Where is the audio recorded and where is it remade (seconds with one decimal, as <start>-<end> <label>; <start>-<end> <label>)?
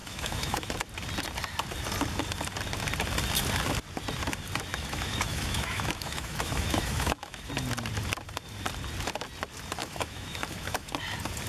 0.0-0.7 remade; 0.7-4.7 recorded; 4.7-7.5 remade; 7.5-9.8 recorded; 9.8-10.9 remade; 10.9-11.5 recorded